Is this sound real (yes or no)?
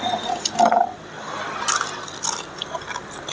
yes